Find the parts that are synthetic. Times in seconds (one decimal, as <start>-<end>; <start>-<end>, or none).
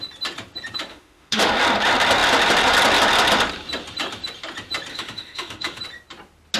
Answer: 0.9-1.5; 4.9-5.8